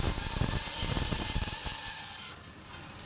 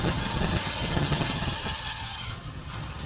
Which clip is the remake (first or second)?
second